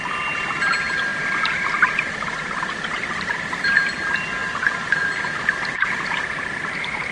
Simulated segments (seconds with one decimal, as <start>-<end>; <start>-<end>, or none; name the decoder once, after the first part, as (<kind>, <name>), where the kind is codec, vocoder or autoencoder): 4.4-5.0 (vocoder, BigVGAN v2)